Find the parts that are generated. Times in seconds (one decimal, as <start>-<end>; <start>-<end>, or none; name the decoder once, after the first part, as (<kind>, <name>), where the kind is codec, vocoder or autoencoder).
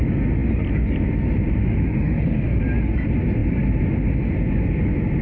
1.6-2.6 (autoencoder, DAC-VAE)